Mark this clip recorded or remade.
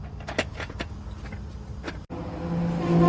recorded